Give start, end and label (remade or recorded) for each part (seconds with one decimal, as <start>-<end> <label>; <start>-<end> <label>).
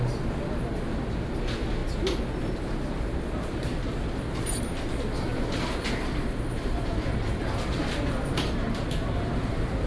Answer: 0.0-9.9 recorded